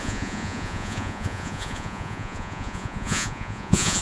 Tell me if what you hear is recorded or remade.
remade